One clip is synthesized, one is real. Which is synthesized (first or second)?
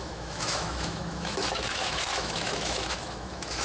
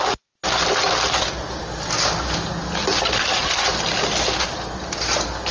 first